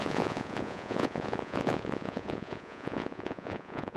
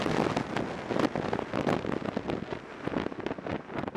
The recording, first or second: second